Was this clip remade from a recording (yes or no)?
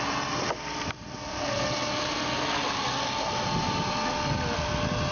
no